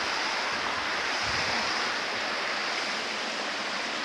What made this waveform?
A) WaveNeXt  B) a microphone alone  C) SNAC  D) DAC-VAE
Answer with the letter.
B